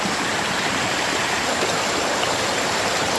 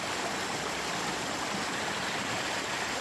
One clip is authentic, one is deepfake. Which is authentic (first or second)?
second